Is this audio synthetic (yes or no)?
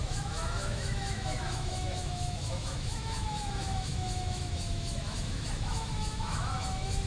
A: yes